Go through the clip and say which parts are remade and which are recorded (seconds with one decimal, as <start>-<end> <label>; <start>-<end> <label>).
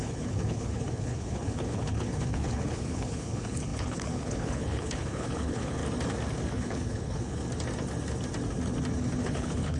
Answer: 0.0-5.8 remade; 5.8-6.5 recorded; 6.5-7.4 remade; 7.4-9.2 recorded; 9.2-9.8 remade